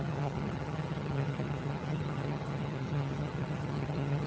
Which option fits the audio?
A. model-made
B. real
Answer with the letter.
A